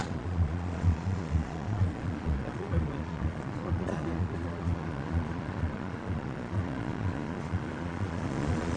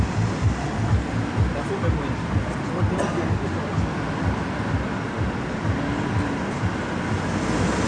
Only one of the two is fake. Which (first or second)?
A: first